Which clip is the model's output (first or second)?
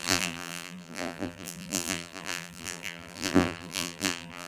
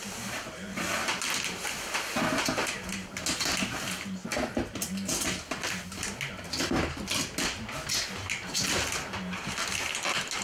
first